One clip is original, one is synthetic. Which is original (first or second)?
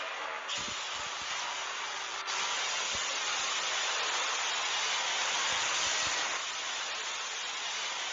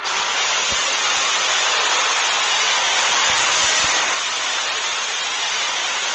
first